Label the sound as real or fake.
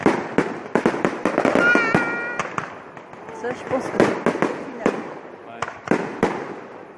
real